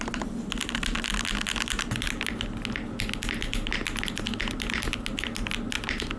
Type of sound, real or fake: real